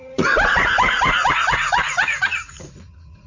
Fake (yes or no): yes